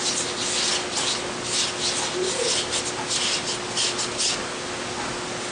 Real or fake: real